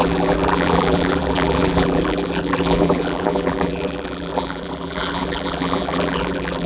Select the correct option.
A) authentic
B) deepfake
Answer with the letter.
B